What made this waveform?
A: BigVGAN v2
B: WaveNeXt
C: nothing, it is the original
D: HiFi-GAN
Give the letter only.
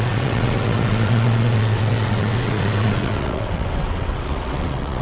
B